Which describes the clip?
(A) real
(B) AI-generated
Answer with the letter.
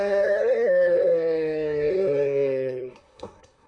B